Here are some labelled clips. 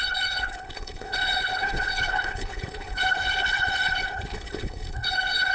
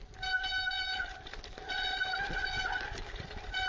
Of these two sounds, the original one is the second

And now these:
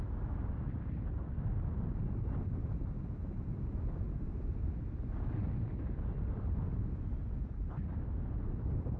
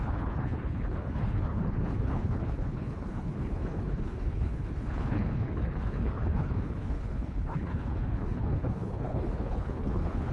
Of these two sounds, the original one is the first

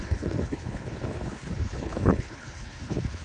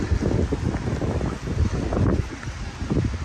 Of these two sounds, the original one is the second